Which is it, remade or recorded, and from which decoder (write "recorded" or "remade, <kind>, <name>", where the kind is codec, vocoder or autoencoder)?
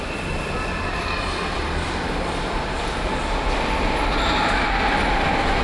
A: recorded